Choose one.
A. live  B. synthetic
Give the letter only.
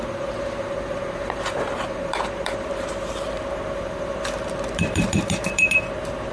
B